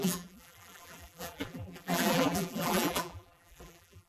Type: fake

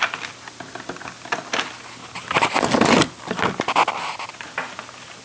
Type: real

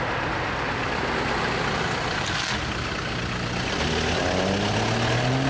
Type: real